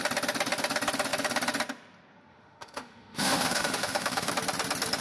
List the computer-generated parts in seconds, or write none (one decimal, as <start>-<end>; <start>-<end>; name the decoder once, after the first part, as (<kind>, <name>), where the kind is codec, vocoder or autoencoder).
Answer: 2.3-4.3 (autoencoder, DAC-VAE)